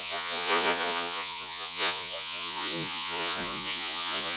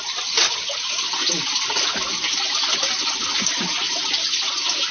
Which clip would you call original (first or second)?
second